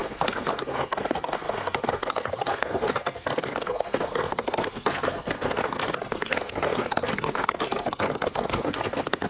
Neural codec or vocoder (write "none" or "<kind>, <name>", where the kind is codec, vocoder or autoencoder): codec, SNAC